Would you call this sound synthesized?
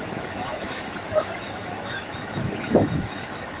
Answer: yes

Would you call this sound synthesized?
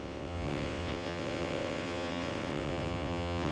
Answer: yes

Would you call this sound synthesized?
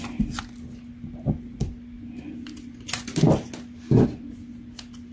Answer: no